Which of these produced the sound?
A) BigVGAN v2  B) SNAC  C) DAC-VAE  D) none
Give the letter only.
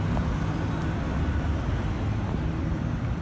D